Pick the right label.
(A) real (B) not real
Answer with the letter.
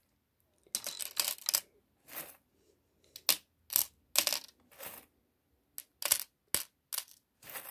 A